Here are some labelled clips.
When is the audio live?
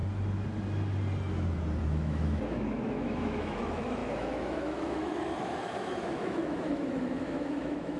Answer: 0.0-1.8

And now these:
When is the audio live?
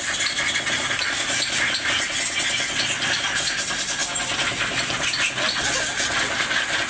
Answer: 0.0-6.9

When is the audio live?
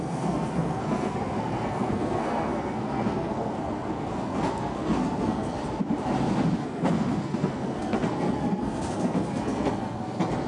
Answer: 5.6-6.6